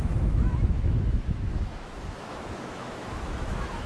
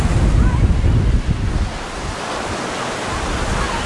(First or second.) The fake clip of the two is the first